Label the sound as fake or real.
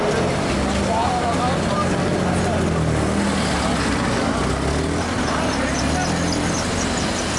real